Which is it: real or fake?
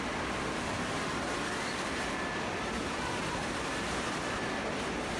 real